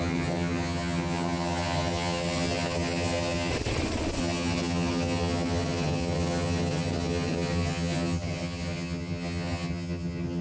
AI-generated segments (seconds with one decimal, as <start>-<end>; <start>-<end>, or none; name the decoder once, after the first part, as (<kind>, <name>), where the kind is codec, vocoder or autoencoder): 0.0-3.5 (vocoder, HiFi-GAN); 4.2-10.4